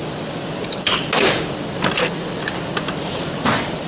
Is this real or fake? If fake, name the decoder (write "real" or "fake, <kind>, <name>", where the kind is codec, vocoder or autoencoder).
real